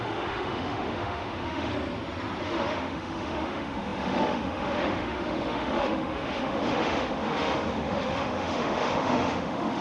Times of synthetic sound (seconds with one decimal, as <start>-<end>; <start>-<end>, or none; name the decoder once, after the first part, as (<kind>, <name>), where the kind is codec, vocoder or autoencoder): 0.0-1.7 (autoencoder, DAC-VAE); 2.4-9.8